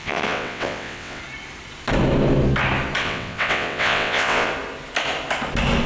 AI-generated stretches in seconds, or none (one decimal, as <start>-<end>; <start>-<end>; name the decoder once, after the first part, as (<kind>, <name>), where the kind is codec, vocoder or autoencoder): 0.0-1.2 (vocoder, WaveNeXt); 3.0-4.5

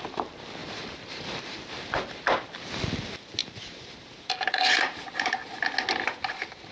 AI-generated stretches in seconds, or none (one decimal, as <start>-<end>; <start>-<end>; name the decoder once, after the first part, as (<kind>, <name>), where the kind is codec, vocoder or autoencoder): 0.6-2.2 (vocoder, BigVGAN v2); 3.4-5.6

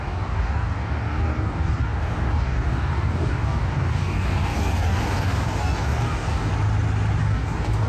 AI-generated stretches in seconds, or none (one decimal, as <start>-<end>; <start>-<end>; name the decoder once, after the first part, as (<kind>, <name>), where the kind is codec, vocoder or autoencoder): 0.0-6.5 (codec, DAC); 7.2-7.9

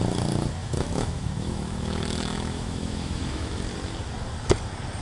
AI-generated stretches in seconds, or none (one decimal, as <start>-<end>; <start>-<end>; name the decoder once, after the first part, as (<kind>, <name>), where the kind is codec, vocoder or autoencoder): 0.6-3.6 (autoencoder, DAC-VAE)